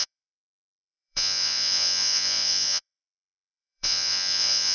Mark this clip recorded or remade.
remade